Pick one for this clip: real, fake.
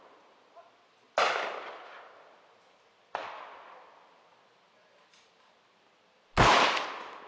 real